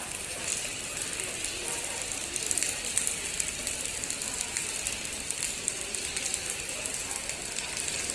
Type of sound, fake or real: real